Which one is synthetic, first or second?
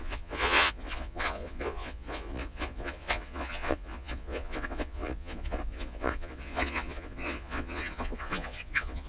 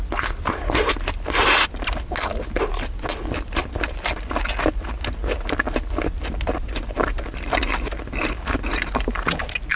first